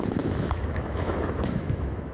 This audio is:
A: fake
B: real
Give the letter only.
A